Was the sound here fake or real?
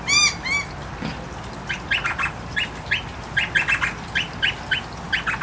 real